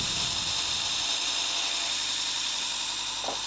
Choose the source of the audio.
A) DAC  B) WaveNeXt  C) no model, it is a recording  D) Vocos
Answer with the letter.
C